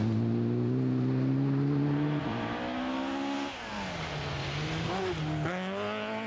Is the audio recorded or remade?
recorded